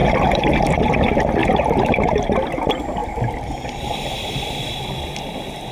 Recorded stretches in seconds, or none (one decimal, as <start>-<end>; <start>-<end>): 0.9-1.4; 2.1-5.7